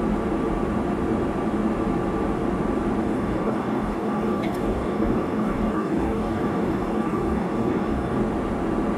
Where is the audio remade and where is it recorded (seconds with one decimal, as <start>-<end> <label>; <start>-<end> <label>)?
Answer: 0.0-3.0 recorded; 3.0-8.2 remade; 8.2-9.0 recorded